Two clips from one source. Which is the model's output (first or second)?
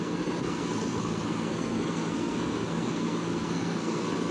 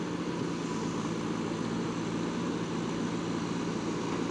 first